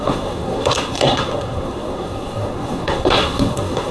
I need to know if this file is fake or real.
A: fake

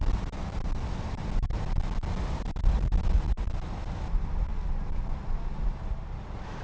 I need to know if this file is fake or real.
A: real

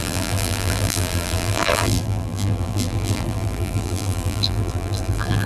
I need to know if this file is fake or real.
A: fake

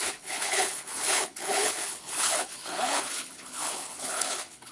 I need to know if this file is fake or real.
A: fake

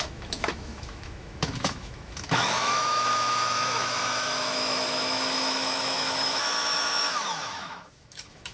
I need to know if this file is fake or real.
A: fake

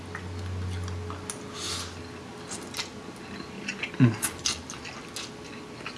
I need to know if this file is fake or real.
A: real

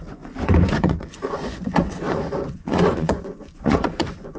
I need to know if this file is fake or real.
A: fake